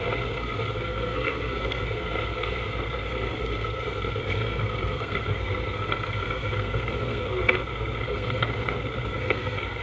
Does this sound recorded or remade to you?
remade